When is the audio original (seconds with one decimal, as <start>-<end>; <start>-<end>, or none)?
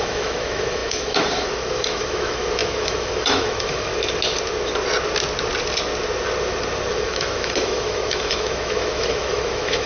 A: 3.9-6.9